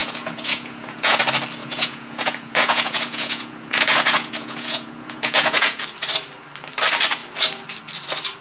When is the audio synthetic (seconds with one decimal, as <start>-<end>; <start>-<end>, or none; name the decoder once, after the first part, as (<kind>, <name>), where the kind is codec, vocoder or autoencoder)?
0.0-1.2 (vocoder, Vocos); 1.6-5.8